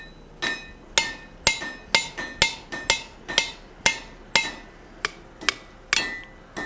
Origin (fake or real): real